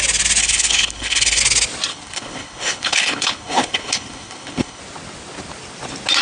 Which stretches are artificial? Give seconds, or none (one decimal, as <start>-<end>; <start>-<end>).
0.4-1.4; 1.9-4.8